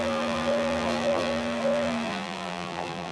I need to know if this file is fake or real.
fake